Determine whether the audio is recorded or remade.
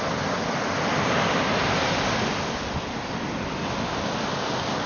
recorded